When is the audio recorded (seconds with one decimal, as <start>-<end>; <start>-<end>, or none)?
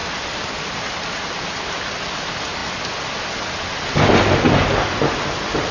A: 0.0-5.7